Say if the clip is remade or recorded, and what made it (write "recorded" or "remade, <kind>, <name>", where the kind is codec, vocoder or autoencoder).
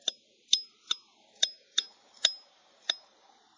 recorded